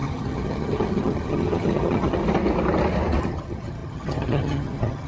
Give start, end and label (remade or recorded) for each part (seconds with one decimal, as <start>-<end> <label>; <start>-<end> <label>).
0.0-2.2 remade; 2.2-3.2 recorded; 3.2-5.1 remade